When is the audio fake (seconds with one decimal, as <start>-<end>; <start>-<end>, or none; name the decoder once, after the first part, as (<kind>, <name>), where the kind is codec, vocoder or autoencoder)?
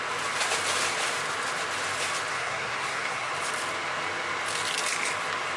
2.3-3.3 (codec, SNAC)